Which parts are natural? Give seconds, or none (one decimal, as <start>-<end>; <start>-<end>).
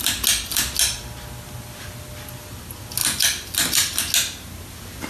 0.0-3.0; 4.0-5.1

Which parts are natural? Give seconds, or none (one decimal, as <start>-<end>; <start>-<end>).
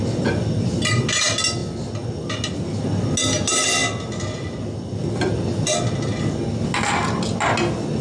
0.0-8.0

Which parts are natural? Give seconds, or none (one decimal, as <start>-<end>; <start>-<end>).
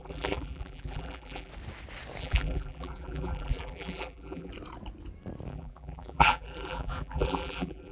1.5-2.2; 4.5-5.5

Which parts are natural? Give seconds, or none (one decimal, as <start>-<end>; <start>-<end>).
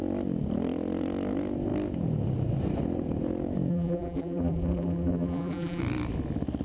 0.0-3.7; 5.8-6.6